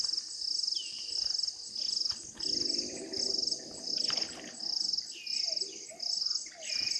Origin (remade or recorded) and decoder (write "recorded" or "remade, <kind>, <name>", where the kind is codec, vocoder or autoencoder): recorded